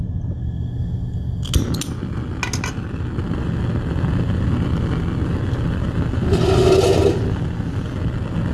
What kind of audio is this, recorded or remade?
recorded